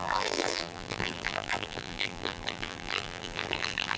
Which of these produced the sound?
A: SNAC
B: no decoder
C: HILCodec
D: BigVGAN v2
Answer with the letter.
D